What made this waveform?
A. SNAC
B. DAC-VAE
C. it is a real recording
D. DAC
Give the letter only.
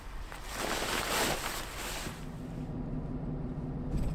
C